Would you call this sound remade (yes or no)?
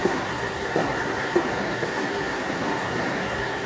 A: yes